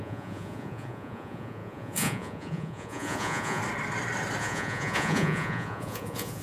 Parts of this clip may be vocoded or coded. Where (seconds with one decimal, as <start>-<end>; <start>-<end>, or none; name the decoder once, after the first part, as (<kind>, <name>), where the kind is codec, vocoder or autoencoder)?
0.0-3.6 (vocoder, Vocos); 4.4-6.4